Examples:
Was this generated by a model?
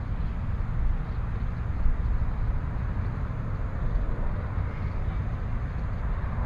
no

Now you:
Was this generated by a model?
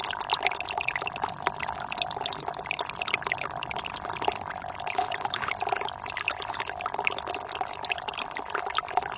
no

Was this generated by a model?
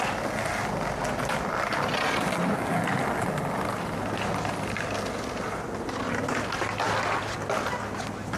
no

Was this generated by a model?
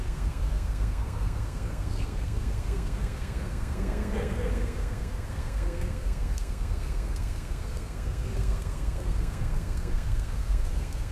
yes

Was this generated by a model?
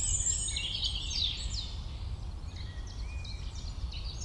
no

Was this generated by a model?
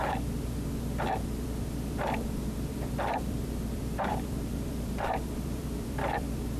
yes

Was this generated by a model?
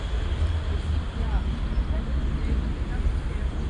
no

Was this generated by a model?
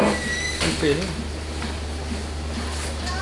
no